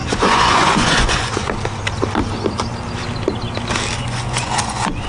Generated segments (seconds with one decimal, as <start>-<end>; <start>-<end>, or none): 0.0-1.5; 4.0-5.1